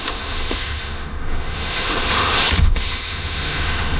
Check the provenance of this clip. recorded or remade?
remade